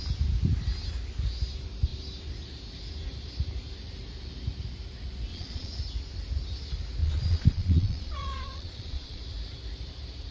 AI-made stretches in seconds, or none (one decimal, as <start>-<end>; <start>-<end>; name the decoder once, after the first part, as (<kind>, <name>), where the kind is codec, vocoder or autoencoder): 5.3-5.8 (vocoder, Vocos); 7.0-9.2